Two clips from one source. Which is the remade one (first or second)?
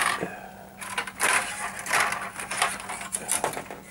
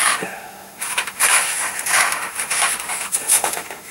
second